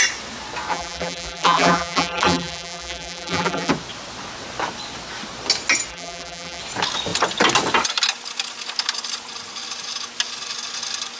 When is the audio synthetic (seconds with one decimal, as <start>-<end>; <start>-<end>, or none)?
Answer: 0.7-3.7; 5.9-6.6